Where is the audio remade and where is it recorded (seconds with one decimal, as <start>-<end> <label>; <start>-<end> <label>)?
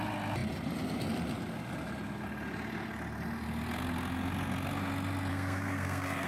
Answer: 0.0-5.3 recorded; 5.3-6.3 remade